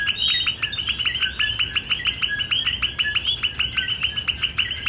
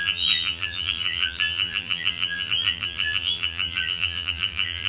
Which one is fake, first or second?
second